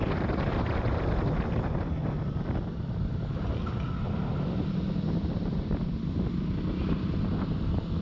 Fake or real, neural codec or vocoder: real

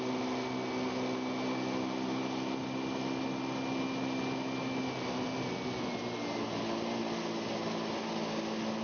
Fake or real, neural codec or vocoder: real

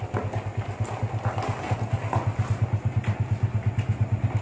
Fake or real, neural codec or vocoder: real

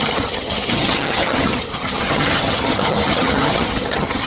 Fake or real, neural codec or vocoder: fake, vocoder, HiFi-GAN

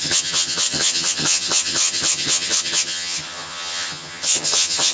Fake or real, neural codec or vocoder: fake, vocoder, HiFi-GAN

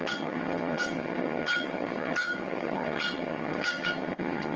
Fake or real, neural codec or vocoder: fake, vocoder, HiFi-GAN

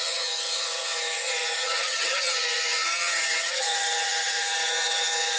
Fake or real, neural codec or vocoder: fake, vocoder, HiFi-GAN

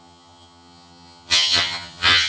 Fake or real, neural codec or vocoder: fake, vocoder, HiFi-GAN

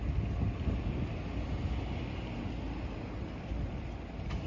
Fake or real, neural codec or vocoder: real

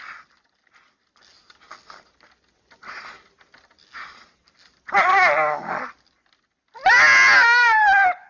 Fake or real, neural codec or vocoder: real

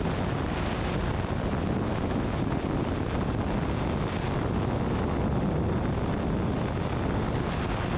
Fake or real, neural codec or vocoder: real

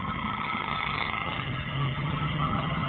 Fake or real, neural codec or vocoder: fake, vocoder, HiFi-GAN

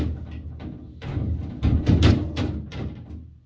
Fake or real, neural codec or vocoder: real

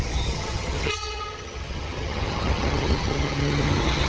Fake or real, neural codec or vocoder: fake, vocoder, HiFi-GAN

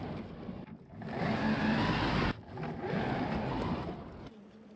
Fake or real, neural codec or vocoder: real